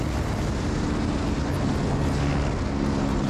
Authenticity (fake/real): real